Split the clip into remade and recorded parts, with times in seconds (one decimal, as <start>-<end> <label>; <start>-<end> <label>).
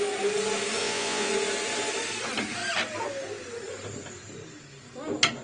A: 0.0-0.8 recorded; 0.8-1.3 remade; 1.3-5.4 recorded